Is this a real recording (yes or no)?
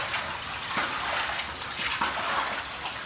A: yes